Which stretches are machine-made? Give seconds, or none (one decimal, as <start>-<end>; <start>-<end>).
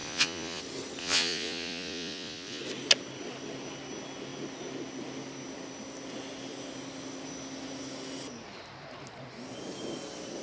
0.0-0.6; 1.0-2.6